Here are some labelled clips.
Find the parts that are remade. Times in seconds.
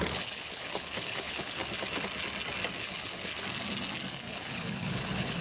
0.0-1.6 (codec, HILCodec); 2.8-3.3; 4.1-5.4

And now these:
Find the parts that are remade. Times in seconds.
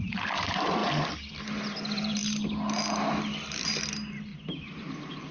0.0-0.8 (vocoder, BigVGAN v2); 1.4-2.2; 3.1-4.3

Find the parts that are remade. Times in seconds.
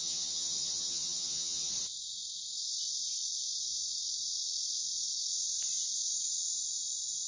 0.0-1.7 (vocoder, HiFi-GAN)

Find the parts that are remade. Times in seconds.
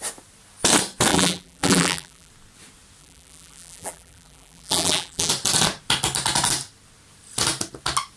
1.1-2.3 (vocoder, BigVGAN v2); 3.0-5.3